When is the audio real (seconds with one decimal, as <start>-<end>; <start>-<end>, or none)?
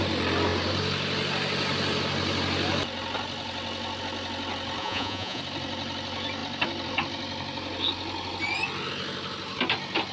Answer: 0.0-4.8; 5.4-10.1